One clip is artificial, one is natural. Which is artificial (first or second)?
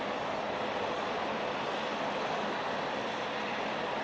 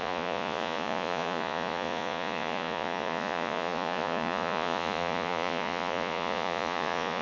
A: second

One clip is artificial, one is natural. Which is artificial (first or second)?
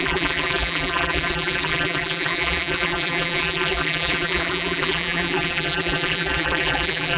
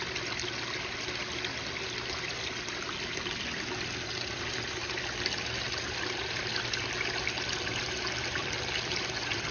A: first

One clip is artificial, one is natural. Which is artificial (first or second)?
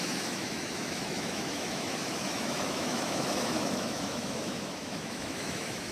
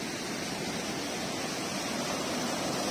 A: first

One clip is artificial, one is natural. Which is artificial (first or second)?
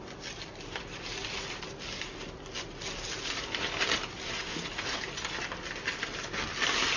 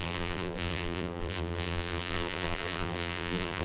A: second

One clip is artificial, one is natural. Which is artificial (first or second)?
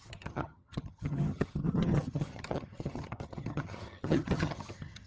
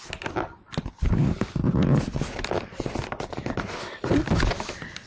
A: first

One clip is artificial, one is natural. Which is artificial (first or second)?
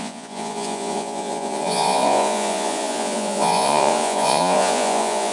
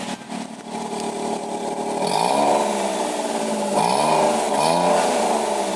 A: first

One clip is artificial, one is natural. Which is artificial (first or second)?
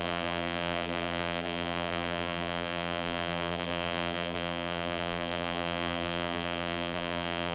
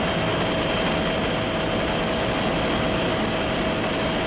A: first